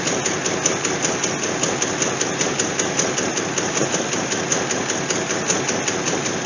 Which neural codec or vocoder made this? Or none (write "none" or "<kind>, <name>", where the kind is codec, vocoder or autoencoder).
none